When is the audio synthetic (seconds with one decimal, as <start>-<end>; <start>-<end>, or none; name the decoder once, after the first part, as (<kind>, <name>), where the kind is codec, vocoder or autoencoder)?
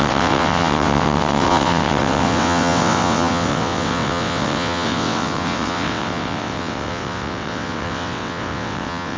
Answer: 0.0-9.2 (vocoder, WaveNeXt)